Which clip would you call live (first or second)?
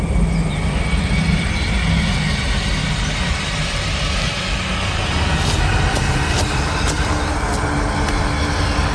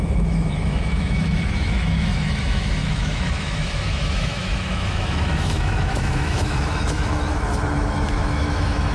first